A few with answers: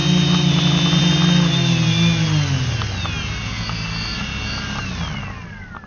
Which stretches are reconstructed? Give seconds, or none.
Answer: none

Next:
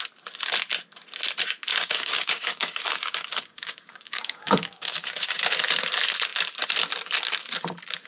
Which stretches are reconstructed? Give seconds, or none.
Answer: 1.7-5.4 (codec, DAC)

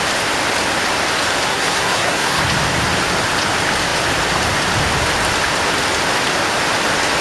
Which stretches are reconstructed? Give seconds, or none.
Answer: 1.5-2.4 (codec, SNAC)

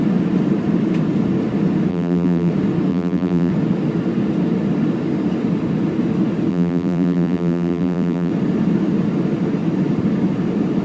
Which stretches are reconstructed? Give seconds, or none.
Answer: 1.9-2.5 (vocoder, BigVGAN v2); 2.9-3.5; 6.5-8.3

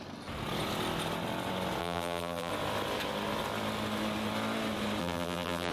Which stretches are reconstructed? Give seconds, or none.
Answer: 1.8-2.5 (vocoder, BigVGAN v2); 5.0-5.7

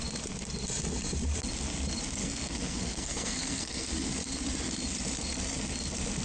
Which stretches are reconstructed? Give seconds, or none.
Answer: 2.2-4.1 (codec, SNAC)

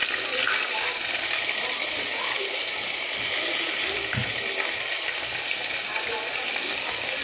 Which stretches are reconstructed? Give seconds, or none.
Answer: 1.2-7.2 (vocoder, BigVGAN v2)